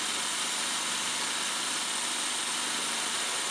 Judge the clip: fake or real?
real